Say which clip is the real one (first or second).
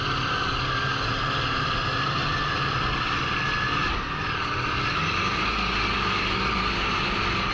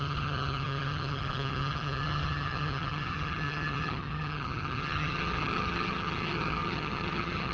first